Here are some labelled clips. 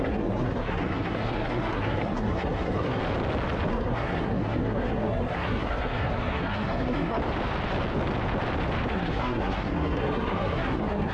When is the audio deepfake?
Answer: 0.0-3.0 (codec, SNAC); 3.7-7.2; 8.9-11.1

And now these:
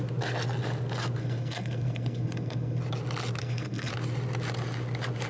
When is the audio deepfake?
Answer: 1.2-2.8 (codec, SNAC); 3.4-3.9

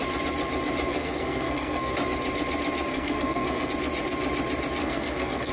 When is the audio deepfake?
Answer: 0.9-1.9 (codec, SNAC); 2.9-3.7; 4.8-5.5

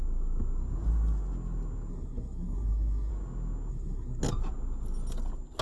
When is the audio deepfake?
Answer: 1.9-3.1 (codec, SNAC); 3.7-4.2